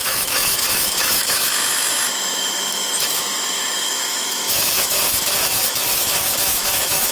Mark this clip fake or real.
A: fake